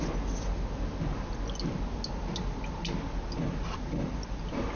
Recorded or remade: recorded